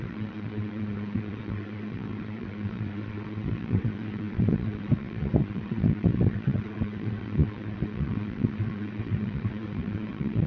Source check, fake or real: fake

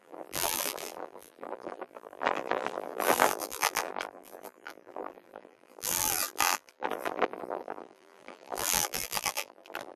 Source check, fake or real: fake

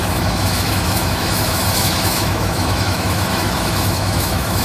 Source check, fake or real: fake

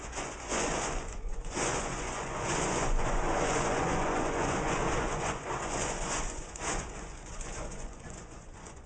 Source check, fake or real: fake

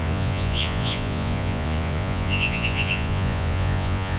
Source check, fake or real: fake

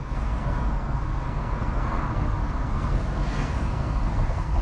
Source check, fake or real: fake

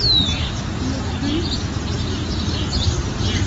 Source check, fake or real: real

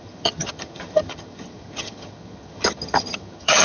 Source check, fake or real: fake